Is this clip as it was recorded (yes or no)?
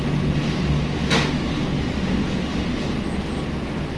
yes